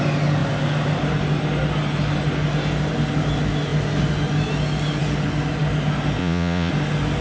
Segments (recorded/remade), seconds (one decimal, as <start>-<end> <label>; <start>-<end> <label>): 0.0-6.2 recorded; 6.2-6.7 remade; 6.7-7.2 recorded